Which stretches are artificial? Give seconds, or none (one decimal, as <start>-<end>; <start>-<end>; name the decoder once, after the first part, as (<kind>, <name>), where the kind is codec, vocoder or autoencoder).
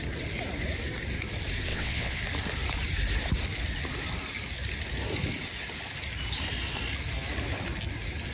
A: 1.7-2.2 (vocoder, WaveNeXt)